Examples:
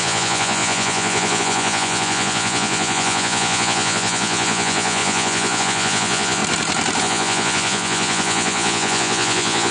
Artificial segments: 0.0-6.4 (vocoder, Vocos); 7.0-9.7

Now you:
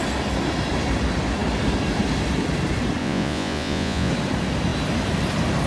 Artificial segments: 3.0-4.1 (vocoder, Vocos)

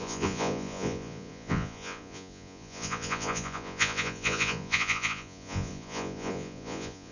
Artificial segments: 0.0-7.1 (vocoder, Vocos)

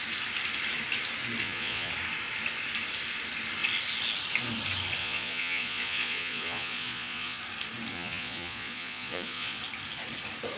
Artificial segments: 1.4-1.9 (vocoder, Vocos); 5.0-7.4; 7.9-9.6

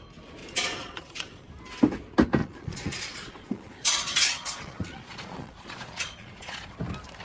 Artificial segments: 0.4-1.5 (vocoder, Vocos); 2.4-6.7